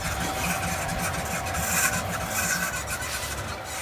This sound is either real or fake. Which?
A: real